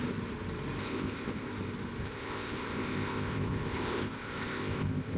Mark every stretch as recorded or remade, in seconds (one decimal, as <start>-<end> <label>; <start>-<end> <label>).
0.0-0.8 recorded; 0.8-1.5 remade; 1.5-2.0 recorded; 2.0-5.2 remade